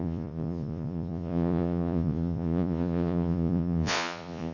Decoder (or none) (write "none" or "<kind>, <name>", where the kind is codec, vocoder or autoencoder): vocoder, Vocos